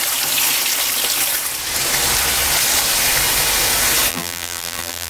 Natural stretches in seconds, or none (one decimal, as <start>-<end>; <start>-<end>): 0.0-4.1